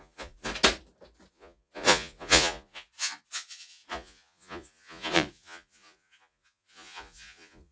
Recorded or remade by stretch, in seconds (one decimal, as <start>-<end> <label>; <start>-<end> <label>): 0.0-0.5 remade; 0.5-1.3 recorded; 1.3-7.7 remade